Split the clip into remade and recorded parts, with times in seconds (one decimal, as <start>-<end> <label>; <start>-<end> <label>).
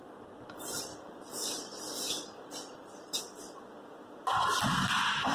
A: 0.0-3.2 remade; 3.2-5.3 recorded